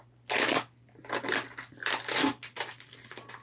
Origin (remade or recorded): recorded